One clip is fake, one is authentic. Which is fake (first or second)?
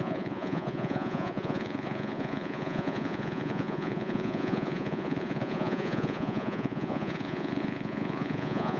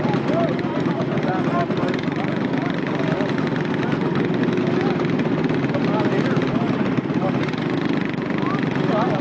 first